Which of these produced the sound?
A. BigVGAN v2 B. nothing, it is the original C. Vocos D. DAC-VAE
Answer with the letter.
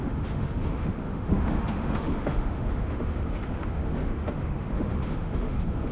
D